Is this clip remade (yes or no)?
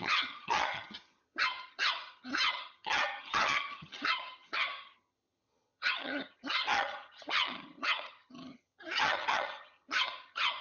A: yes